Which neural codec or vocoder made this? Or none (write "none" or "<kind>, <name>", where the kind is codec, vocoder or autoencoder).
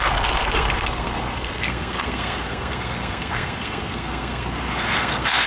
codec, SNAC